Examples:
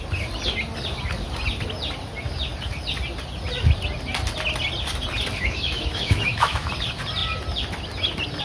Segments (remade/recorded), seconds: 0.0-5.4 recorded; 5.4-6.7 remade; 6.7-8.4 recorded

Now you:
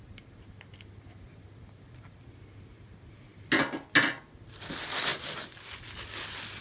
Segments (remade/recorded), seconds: 0.0-6.6 recorded

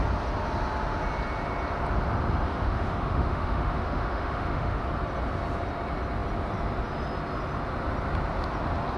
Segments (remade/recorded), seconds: 0.0-2.5 recorded; 2.5-4.8 remade; 4.8-9.0 recorded